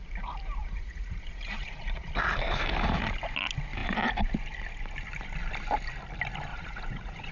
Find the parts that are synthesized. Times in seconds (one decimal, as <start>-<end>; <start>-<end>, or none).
0.6-2.1; 6.5-7.3